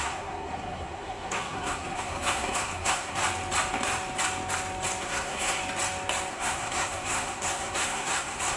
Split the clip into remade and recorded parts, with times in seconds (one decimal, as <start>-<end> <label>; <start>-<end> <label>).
0.0-3.2 remade; 3.2-5.0 recorded; 5.0-5.6 remade; 5.6-6.3 recorded; 6.3-8.6 remade